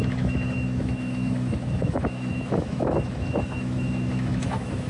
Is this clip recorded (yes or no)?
no